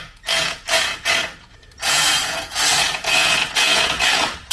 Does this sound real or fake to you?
fake